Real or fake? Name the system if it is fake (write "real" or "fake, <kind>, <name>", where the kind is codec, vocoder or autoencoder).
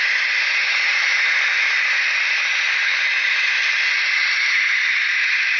real